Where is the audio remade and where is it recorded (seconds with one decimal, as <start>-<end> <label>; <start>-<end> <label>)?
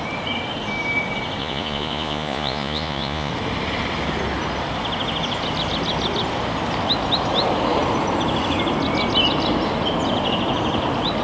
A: 0.0-1.4 recorded; 1.4-3.3 remade; 3.3-11.2 recorded